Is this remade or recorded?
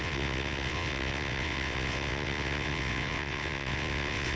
remade